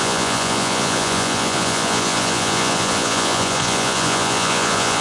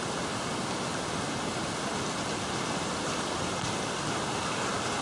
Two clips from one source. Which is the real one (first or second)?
second